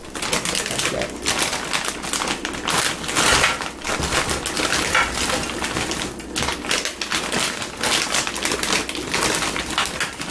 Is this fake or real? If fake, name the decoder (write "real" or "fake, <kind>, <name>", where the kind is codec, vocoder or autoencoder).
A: real